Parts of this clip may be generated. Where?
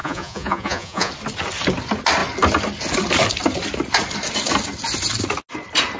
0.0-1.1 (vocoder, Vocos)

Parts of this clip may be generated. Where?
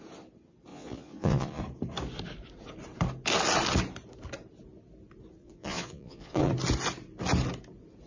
0.7-1.6 (vocoder, Vocos); 5.4-6.5